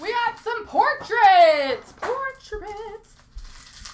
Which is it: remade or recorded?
recorded